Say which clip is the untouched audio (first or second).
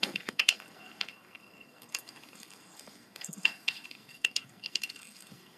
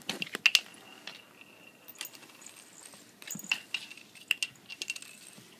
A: second